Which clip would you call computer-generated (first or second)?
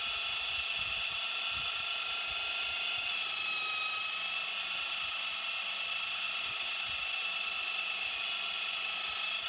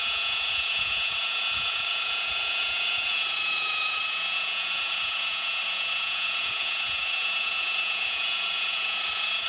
second